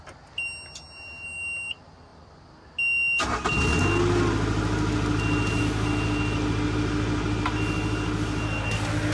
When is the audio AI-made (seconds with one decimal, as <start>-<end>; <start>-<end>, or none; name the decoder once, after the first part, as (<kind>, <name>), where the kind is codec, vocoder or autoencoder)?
none